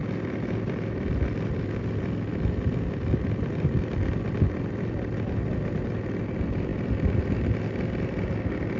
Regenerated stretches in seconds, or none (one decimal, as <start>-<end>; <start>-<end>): none